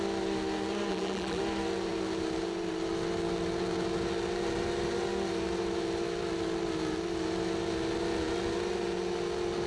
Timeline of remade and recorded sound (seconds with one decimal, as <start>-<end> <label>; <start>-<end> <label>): 0.0-0.9 recorded; 0.9-1.4 remade; 1.4-9.7 recorded